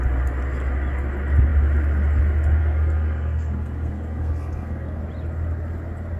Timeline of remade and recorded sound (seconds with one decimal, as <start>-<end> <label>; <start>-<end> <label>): 0.0-2.6 recorded; 2.6-5.0 remade; 5.0-6.2 recorded